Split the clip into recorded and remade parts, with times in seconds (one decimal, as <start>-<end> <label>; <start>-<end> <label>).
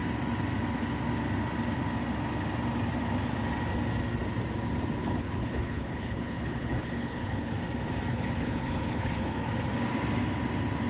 0.0-5.0 recorded; 5.0-7.6 remade; 7.6-8.1 recorded; 8.1-9.5 remade; 9.5-10.9 recorded